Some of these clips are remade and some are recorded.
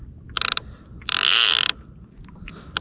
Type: recorded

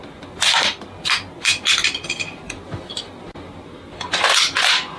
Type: recorded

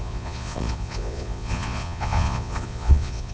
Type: remade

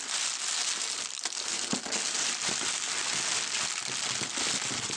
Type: recorded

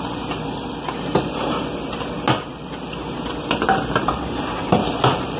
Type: recorded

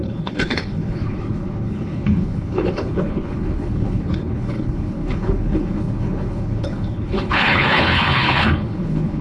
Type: remade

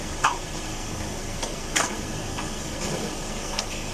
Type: remade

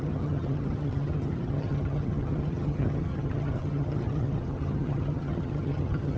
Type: remade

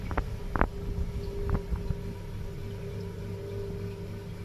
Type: recorded